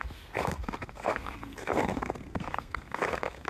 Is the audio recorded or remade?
remade